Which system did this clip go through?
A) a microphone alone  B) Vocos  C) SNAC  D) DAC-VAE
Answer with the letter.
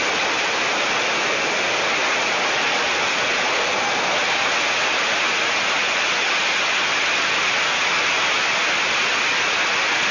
A